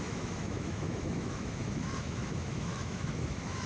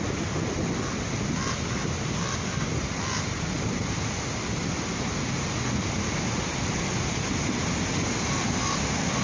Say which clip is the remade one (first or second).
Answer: first